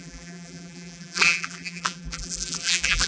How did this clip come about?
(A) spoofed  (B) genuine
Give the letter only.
A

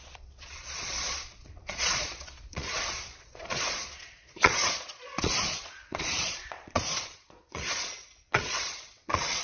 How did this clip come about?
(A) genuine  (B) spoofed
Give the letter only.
B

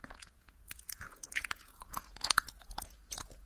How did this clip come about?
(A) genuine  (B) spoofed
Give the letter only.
B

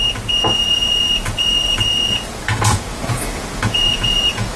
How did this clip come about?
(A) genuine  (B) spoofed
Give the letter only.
B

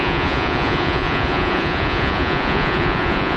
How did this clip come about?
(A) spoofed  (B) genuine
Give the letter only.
A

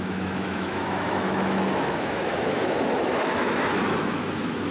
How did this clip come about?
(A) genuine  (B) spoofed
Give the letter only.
B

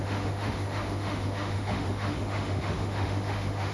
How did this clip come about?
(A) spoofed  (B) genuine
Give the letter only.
A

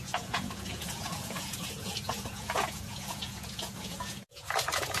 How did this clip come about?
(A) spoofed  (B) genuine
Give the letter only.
A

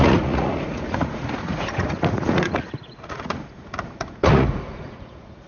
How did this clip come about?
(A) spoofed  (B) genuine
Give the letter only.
A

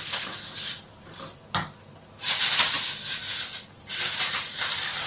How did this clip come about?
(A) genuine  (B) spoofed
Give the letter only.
A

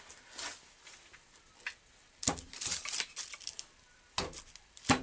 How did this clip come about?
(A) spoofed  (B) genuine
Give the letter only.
B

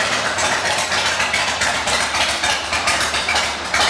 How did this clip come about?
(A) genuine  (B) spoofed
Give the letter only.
B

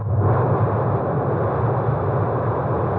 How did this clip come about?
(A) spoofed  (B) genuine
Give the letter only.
B